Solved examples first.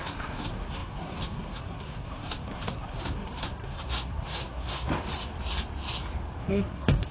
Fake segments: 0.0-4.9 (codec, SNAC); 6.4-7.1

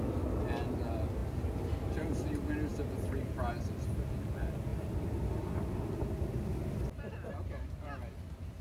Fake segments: none

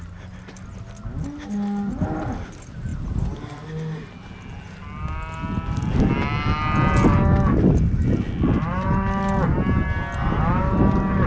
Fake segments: none

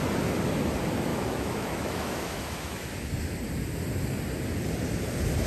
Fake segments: 1.1-3.1 (autoencoder, DAC-VAE)

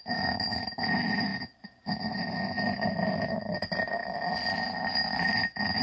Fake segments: none